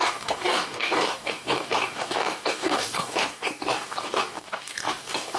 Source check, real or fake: fake